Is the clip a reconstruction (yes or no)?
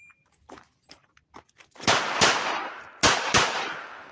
yes